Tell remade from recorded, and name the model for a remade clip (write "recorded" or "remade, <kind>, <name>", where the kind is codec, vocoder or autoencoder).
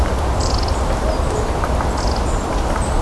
recorded